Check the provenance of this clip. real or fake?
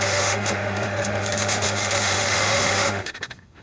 fake